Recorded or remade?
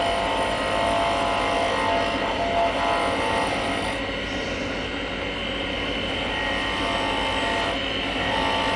recorded